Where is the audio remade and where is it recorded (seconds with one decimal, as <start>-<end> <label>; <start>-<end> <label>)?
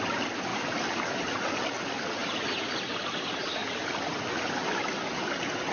0.0-0.5 recorded; 0.5-1.5 remade; 1.5-5.7 recorded